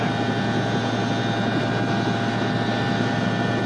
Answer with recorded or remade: recorded